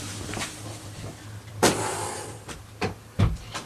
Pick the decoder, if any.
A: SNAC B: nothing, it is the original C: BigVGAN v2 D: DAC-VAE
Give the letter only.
C